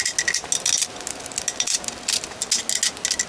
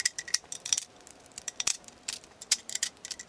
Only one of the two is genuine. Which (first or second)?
first